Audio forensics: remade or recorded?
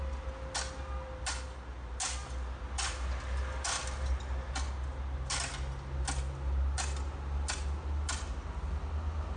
recorded